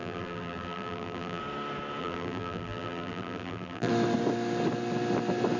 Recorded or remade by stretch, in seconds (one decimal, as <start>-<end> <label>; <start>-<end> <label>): 0.0-1.4 remade; 1.4-2.0 recorded; 2.0-3.9 remade; 3.9-5.6 recorded